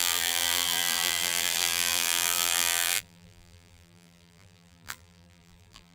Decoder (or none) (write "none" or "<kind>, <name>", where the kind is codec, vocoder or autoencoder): vocoder, BigVGAN v2